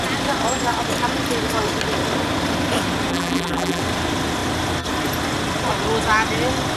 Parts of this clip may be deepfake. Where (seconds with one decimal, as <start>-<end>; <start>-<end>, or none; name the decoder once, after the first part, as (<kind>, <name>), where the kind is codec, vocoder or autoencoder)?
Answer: 3.1-3.8 (vocoder, BigVGAN v2)